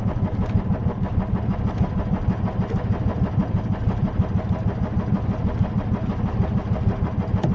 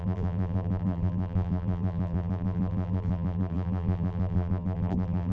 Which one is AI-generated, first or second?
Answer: second